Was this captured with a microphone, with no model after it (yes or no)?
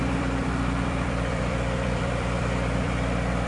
no